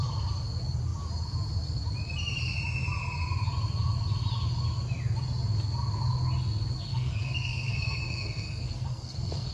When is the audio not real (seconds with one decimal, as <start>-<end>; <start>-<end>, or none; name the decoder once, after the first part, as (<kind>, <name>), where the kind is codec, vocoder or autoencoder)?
6.9-9.5 (codec, SNAC)

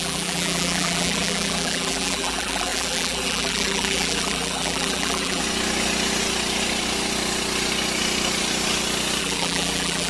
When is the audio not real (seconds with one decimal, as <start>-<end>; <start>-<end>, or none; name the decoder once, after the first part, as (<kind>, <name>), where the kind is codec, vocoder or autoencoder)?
0.0-5.4 (vocoder, BigVGAN v2); 9.2-10.1

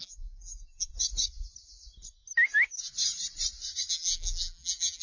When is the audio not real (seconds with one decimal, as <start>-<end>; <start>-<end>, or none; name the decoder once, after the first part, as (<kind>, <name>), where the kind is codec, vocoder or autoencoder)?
0.0-0.9 (vocoder, BigVGAN v2); 3.9-5.0

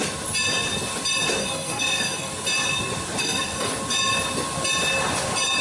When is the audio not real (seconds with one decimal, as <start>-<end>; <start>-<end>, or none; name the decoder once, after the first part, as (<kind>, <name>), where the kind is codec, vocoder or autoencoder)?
1.4-2.3 (codec, SNAC); 3.2-3.7

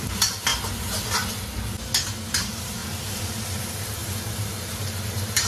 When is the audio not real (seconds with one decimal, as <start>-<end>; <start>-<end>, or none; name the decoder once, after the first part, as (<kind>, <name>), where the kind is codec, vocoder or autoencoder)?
0.0-0.5 (vocoder, BigVGAN v2); 2.4-5.5

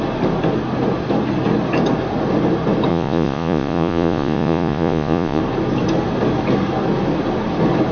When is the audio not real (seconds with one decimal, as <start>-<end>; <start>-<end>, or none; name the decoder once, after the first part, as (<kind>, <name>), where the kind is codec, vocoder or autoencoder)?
2.9-5.4 (vocoder, Vocos)

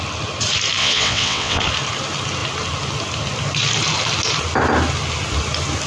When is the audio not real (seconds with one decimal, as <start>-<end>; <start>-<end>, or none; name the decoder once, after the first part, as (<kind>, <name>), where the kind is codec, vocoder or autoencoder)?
0.8-1.6 (vocoder, WaveNeXt)